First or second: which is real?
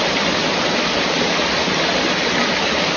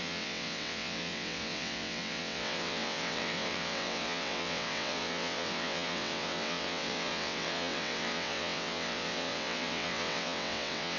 first